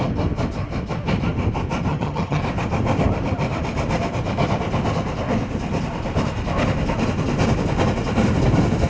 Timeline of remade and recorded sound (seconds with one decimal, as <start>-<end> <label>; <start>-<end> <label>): 0.0-1.9 recorded; 1.9-2.4 remade; 2.4-8.9 recorded